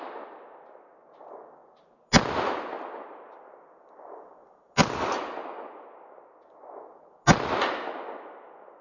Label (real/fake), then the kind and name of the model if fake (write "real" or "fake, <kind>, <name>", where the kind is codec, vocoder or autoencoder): real